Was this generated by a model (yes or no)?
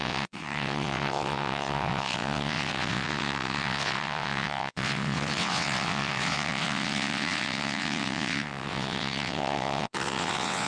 yes